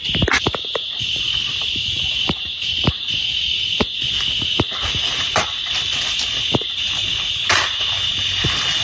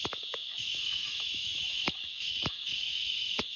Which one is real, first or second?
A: first